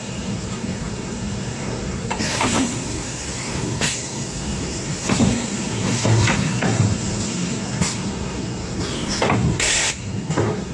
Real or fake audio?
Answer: fake